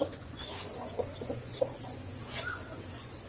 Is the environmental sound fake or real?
fake